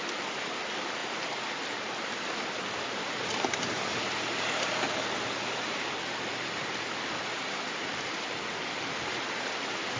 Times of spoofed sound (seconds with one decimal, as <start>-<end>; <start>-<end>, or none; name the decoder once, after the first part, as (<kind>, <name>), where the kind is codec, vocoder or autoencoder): 0.0-10.0 (vocoder, BigVGAN v2)